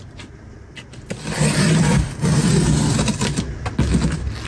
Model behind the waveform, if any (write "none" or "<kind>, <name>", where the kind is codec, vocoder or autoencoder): none